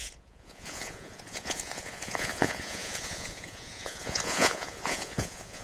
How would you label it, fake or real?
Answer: fake